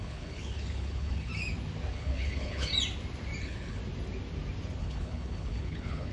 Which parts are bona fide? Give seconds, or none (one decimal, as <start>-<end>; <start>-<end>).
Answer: 1.3-1.9; 2.7-3.4; 3.8-4.8